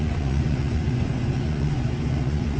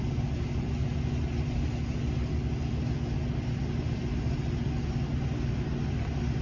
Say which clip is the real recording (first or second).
second